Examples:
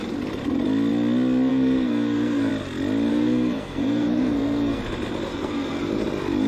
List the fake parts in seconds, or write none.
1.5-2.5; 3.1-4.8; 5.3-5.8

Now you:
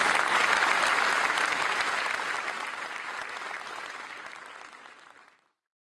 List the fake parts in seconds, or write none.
none

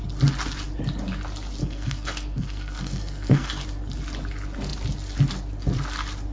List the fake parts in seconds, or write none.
1.6-3.5

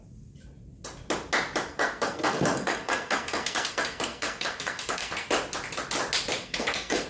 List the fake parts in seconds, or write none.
1.7-5.3; 6.4-7.1

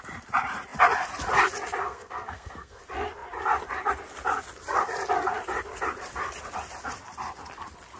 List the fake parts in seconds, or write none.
1.8-2.8

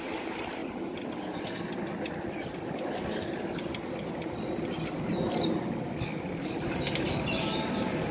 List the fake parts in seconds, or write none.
none

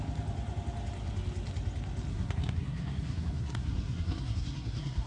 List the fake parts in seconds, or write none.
2.1-5.1

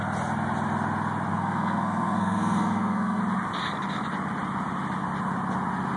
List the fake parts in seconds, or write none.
1.3-3.2